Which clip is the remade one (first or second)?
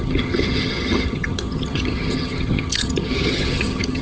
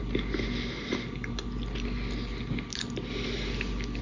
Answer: first